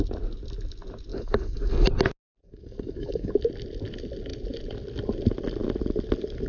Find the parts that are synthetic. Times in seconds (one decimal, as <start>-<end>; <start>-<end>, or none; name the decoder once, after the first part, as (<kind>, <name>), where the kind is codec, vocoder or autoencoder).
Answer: 1.1-1.9 (codec, DAC); 2.4-3.3